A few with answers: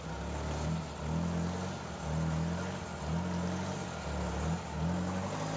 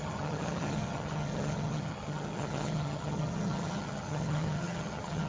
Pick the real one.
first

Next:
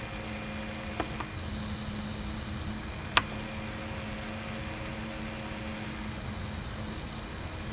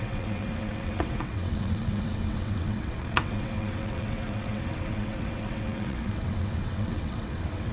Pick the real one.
first